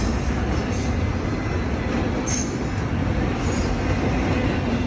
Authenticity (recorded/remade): recorded